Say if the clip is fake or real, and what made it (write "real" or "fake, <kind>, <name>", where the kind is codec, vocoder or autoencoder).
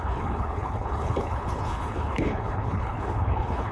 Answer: fake, codec, HILCodec